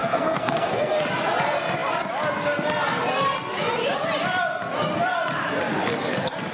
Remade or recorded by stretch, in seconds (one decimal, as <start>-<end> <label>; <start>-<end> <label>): 0.0-1.0 remade; 1.0-6.5 recorded